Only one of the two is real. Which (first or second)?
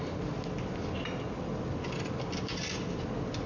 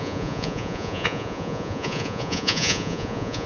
first